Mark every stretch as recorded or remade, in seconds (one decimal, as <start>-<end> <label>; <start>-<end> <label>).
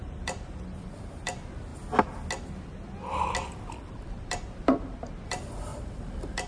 0.0-1.7 remade; 1.7-3.9 recorded; 3.9-6.5 remade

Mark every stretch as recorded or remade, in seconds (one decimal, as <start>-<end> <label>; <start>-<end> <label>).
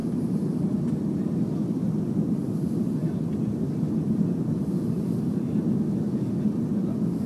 0.0-1.2 remade; 1.2-1.8 recorded; 1.8-5.6 remade; 5.6-7.3 recorded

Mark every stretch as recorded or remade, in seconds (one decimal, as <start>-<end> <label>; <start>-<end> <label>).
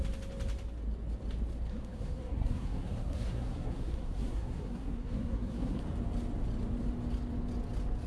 0.0-1.7 recorded; 1.7-5.8 remade; 5.8-8.1 recorded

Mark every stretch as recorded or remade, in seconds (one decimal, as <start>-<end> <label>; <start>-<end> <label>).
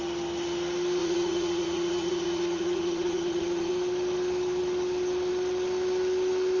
0.0-1.0 recorded; 1.0-3.7 remade; 3.7-6.6 recorded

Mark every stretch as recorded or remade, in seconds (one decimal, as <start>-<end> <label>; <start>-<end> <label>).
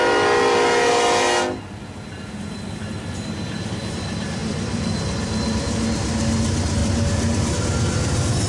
0.0-4.4 recorded; 4.4-5.6 remade; 5.6-6.8 recorded; 6.8-7.5 remade; 7.5-8.5 recorded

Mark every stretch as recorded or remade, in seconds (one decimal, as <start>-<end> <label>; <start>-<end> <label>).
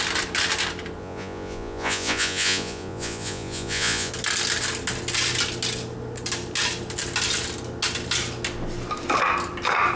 0.0-1.0 recorded; 1.0-4.1 remade; 4.1-10.0 recorded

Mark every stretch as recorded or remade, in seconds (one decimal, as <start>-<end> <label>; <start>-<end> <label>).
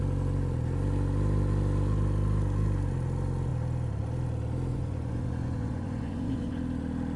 0.0-4.7 recorded; 4.7-6.6 remade; 6.6-7.2 recorded